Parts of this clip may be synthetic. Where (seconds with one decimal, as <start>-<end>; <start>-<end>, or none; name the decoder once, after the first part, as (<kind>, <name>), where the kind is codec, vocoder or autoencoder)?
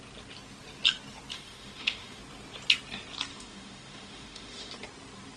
1.3-2.2 (autoencoder, DAC-VAE); 3.3-4.7